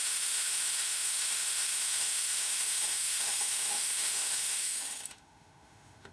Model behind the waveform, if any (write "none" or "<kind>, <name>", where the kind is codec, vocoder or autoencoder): autoencoder, DAC-VAE